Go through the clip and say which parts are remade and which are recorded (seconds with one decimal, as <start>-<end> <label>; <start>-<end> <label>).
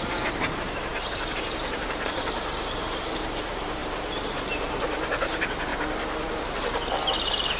0.0-5.7 remade; 5.7-6.4 recorded; 6.4-7.6 remade